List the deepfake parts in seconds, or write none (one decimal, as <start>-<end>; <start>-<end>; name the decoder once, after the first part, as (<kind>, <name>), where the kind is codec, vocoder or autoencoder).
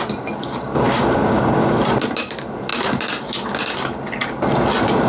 0.7-1.7 (codec, DAC)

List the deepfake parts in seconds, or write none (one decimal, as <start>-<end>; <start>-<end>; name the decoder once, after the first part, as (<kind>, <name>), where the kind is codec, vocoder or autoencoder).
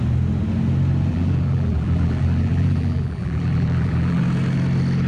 1.1-4.2 (vocoder, BigVGAN v2)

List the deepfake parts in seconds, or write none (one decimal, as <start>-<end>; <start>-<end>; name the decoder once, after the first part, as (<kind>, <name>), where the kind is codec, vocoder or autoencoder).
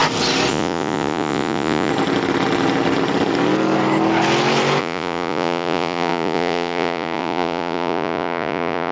0.5-1.9 (vocoder, Vocos); 4.8-8.9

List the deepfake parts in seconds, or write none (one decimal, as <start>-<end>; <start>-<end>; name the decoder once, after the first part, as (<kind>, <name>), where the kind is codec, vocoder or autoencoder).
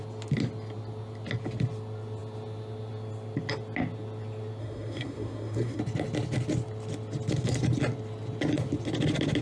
4.6-5.8 (codec, SNAC)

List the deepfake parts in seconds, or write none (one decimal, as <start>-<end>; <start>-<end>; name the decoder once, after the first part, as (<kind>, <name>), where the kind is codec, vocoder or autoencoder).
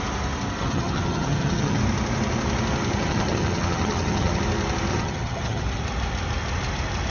0.6-1.8 (vocoder, HiFi-GAN); 3.0-4.4; 4.9-5.6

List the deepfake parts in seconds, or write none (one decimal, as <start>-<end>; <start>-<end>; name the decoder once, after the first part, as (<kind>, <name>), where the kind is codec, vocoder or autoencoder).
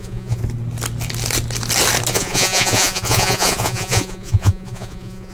0.0-0.4 (vocoder, Vocos); 2.1-5.3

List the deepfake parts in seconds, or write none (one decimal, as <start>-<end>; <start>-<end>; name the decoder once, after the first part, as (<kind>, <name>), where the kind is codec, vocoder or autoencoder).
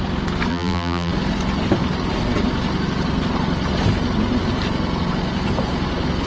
0.5-1.1 (vocoder, BigVGAN v2)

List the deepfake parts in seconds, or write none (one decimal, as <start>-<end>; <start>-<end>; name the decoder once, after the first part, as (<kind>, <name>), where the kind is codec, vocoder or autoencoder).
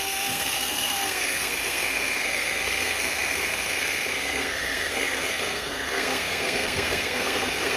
0.0-7.8 (codec, SNAC)